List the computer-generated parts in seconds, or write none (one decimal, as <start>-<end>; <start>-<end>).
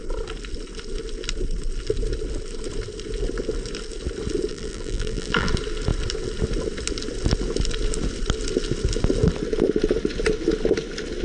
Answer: 4.5-5.5